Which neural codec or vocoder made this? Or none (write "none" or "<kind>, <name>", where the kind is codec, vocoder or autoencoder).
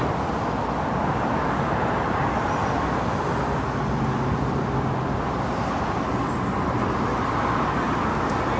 none